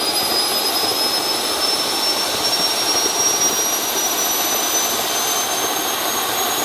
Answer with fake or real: real